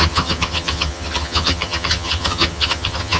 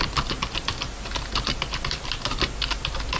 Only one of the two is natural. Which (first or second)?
second